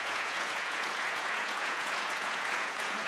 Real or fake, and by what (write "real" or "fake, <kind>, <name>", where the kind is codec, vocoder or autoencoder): fake, vocoder, Vocos